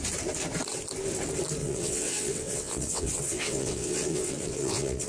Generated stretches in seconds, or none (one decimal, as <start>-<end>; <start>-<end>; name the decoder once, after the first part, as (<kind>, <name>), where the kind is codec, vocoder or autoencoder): 1.6-5.1 (vocoder, WaveNeXt)